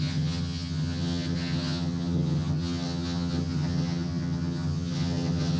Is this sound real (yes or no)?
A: no